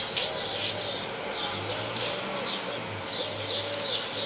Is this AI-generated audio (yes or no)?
no